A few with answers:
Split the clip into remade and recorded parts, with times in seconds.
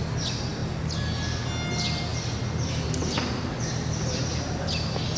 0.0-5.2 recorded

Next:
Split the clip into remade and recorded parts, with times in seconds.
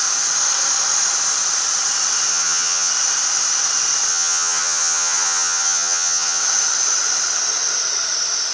0.0-2.3 recorded; 2.3-2.9 remade; 2.9-4.1 recorded; 4.1-6.4 remade; 6.4-8.5 recorded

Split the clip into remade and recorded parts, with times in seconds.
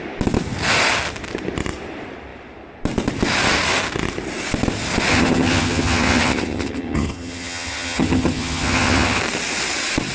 0.0-5.1 recorded; 5.1-9.2 remade; 9.2-10.1 recorded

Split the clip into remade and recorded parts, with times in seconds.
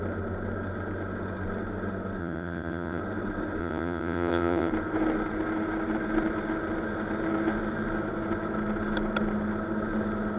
0.0-2.2 recorded; 2.2-3.0 remade; 3.0-3.6 recorded; 3.6-4.7 remade; 4.7-10.4 recorded